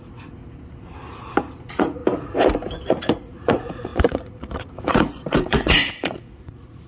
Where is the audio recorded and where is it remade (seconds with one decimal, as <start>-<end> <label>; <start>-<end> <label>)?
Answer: 0.0-0.4 remade; 0.4-1.5 recorded; 1.5-2.0 remade; 2.0-2.9 recorded; 2.9-6.9 remade